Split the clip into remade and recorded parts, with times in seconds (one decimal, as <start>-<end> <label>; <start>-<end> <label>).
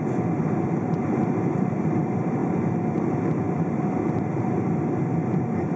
0.0-5.8 remade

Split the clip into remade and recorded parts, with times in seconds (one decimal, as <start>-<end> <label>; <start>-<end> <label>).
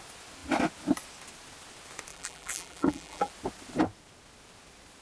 0.0-2.1 recorded; 2.1-3.3 remade; 3.3-5.0 recorded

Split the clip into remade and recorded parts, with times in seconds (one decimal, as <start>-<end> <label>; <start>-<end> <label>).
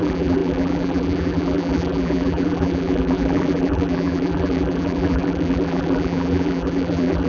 0.0-7.3 remade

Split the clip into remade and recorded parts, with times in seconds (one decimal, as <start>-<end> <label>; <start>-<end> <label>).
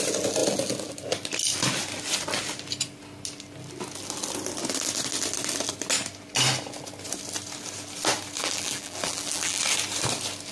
0.0-8.4 recorded; 8.4-9.6 remade; 9.6-10.5 recorded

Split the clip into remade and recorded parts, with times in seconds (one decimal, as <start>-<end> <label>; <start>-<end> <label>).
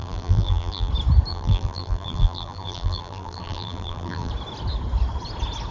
0.0-0.9 remade; 0.9-1.3 recorded; 1.3-4.3 remade; 4.3-5.7 recorded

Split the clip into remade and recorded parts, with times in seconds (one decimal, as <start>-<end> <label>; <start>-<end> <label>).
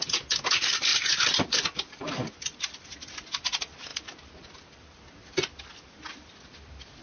0.0-0.9 recorded; 0.9-2.9 remade; 2.9-7.0 recorded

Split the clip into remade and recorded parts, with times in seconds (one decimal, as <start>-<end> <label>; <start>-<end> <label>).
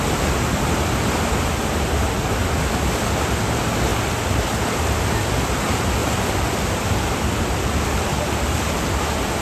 0.0-3.9 recorded; 3.9-5.3 remade; 5.3-6.0 recorded; 6.0-8.2 remade; 8.2-9.4 recorded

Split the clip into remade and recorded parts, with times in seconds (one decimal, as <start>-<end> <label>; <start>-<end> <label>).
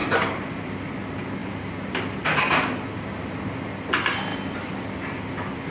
0.0-0.9 remade; 0.9-1.4 recorded; 1.4-3.6 remade; 3.6-4.3 recorded; 4.3-5.3 remade; 5.3-5.7 recorded